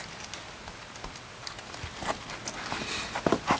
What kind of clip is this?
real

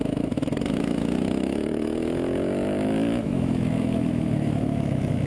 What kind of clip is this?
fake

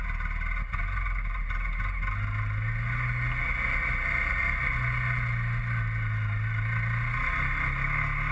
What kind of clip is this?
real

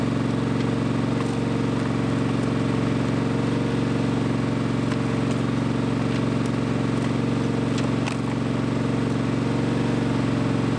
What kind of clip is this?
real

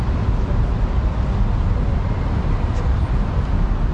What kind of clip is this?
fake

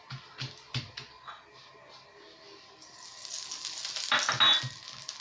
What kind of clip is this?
real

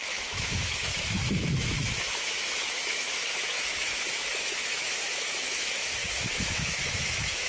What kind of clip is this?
fake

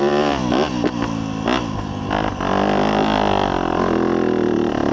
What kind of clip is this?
real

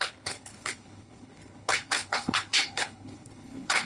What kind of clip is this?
fake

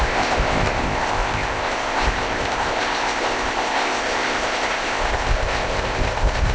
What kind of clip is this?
fake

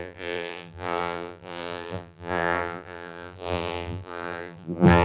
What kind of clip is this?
fake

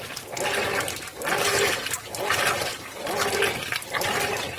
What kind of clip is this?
real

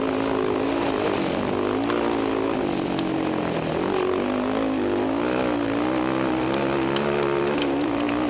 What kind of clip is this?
real